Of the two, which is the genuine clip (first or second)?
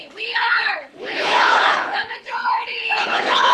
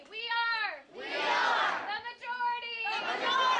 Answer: second